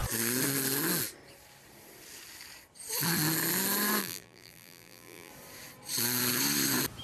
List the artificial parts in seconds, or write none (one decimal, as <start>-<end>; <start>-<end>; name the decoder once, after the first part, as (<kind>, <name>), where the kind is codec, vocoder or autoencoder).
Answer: 4.0-5.3 (vocoder, BigVGAN v2)